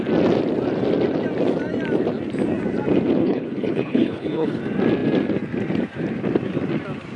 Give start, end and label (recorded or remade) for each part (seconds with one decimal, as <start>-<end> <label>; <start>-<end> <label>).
0.0-3.2 recorded; 3.2-4.6 remade; 4.6-7.2 recorded